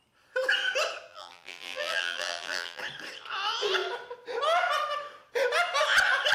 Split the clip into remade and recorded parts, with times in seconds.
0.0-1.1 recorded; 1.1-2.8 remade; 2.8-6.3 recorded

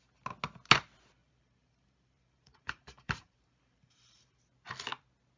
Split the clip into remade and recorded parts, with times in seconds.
0.0-1.2 recorded; 1.2-4.4 remade; 4.4-5.4 recorded

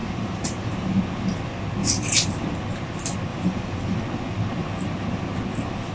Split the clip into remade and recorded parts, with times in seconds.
0.0-1.0 remade; 1.0-1.8 recorded; 1.8-2.5 remade; 2.5-3.3 recorded; 3.3-4.0 remade; 4.0-5.9 recorded

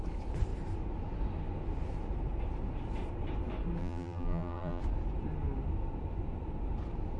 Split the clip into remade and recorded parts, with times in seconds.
0.0-3.8 recorded; 3.8-4.8 remade; 4.8-7.2 recorded

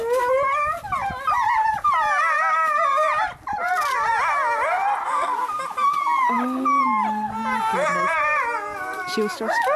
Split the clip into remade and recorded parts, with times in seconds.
0.0-9.8 recorded

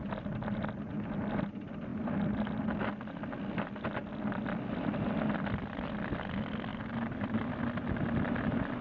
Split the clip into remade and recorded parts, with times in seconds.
0.0-6.7 recorded; 6.7-7.6 remade; 7.6-8.8 recorded